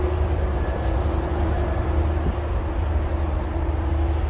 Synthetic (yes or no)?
no